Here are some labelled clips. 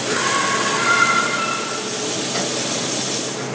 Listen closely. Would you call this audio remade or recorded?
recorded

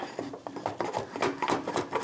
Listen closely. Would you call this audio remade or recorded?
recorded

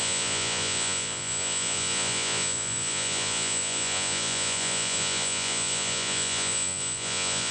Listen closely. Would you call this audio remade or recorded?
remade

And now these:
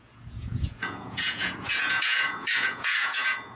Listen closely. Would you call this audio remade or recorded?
remade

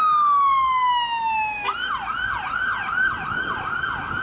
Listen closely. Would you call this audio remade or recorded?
recorded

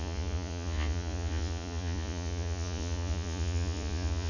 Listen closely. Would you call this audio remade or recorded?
remade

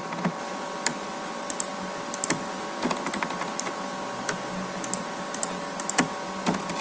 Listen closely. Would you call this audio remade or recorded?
recorded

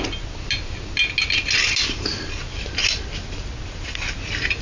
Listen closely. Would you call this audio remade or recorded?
recorded